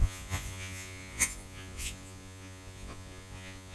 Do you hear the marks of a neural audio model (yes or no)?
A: yes